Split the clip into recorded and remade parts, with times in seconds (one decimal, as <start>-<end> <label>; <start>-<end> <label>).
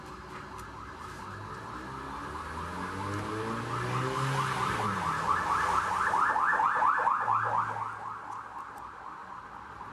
0.0-9.2 recorded; 9.2-9.9 remade